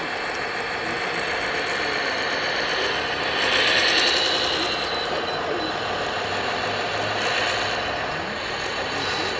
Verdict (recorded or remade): recorded